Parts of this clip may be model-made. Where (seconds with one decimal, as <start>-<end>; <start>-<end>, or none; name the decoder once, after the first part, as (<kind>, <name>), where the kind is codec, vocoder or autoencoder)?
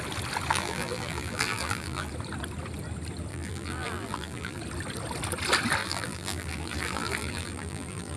0.5-2.1 (vocoder, BigVGAN v2); 3.3-4.6; 5.8-8.2